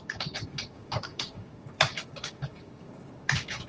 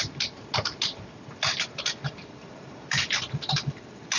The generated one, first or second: first